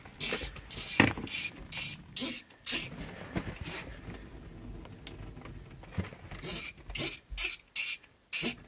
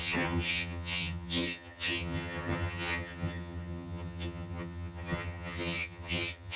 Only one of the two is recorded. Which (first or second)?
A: first